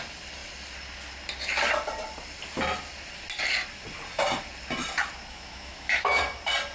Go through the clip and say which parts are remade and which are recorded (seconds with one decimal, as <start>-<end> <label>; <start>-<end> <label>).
0.0-5.3 recorded; 5.3-6.2 remade; 6.2-6.7 recorded